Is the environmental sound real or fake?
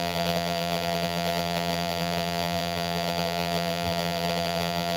fake